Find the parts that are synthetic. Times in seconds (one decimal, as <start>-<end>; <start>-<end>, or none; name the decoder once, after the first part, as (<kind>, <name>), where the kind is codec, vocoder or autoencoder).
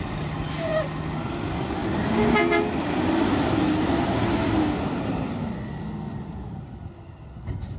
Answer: none